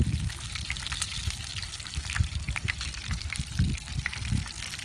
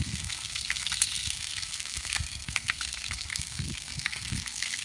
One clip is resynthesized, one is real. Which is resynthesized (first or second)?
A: second